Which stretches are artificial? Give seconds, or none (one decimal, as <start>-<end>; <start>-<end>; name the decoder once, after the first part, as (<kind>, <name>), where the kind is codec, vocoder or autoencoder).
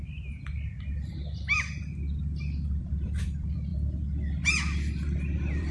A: 2.8-3.7 (vocoder, BigVGAN v2); 4.9-5.7